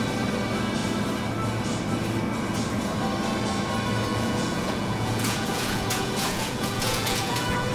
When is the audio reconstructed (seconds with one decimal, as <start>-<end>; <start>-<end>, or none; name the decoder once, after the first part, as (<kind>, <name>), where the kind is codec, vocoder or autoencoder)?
4.1-7.7 (vocoder, Vocos)